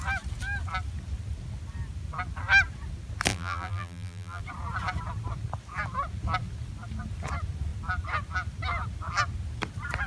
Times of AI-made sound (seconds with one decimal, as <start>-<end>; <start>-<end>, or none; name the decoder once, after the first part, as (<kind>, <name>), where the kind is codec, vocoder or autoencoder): 3.3-4.4 (vocoder, BigVGAN v2)